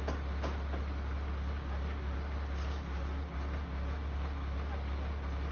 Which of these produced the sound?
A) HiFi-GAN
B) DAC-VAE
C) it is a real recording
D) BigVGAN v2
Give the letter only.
C